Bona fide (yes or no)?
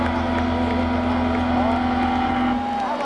yes